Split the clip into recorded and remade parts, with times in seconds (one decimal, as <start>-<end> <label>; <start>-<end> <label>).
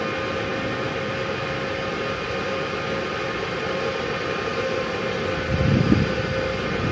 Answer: 0.0-6.9 recorded